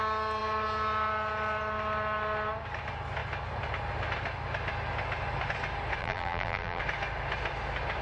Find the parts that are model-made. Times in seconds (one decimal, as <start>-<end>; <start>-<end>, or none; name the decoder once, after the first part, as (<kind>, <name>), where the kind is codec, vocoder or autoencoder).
6.0-6.8 (vocoder, BigVGAN v2)